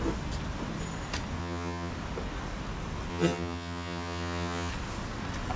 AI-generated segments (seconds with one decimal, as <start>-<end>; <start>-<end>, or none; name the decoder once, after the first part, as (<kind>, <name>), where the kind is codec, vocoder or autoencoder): 1.4-1.9 (vocoder, HiFi-GAN); 3.1-4.7